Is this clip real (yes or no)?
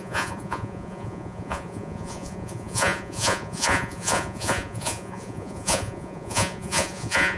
no